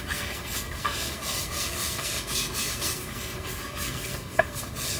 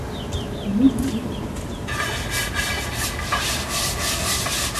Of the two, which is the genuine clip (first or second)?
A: second